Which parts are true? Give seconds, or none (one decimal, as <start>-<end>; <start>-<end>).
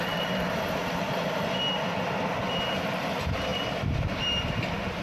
0.0-5.0